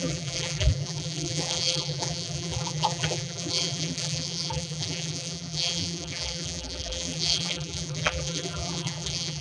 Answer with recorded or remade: remade